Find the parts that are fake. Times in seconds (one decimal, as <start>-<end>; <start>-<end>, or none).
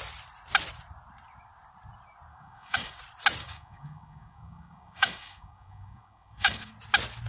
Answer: 2.3-3.0; 3.4-6.7